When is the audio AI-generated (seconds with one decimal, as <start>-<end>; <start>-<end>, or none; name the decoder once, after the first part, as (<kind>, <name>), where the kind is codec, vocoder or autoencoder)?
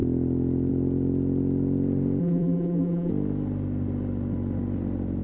2.2-3.1 (vocoder, BigVGAN v2)